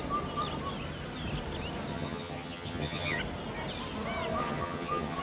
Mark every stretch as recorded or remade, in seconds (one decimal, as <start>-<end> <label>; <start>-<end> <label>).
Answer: 0.0-1.9 recorded; 1.9-3.2 remade; 3.2-4.4 recorded; 4.4-5.2 remade